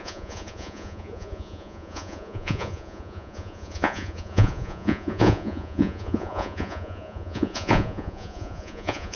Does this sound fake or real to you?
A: fake